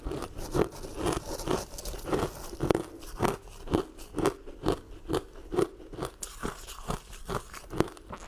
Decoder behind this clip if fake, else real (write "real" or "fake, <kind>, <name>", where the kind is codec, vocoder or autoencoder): real